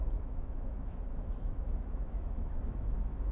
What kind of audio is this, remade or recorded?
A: remade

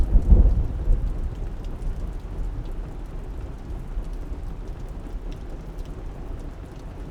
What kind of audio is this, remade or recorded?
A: recorded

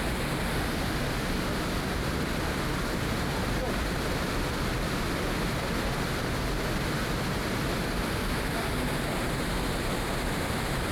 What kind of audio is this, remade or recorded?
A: recorded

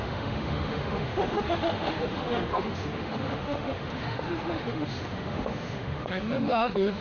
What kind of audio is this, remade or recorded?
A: remade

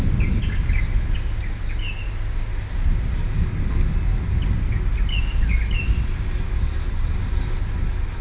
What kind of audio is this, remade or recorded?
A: recorded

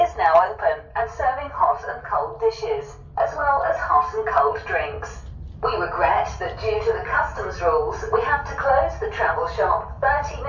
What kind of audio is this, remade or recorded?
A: recorded